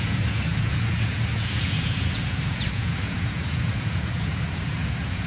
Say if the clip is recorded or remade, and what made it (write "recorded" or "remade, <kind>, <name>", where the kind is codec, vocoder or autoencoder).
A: remade, vocoder, Vocos